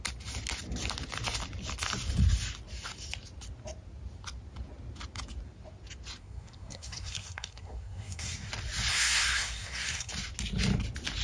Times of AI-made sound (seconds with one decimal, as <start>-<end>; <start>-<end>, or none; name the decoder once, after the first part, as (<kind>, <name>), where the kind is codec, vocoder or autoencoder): 6.2-8.5 (codec, SNAC); 8.9-10.1